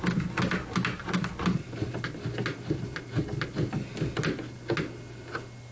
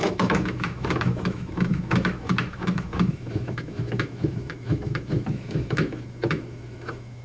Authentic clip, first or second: first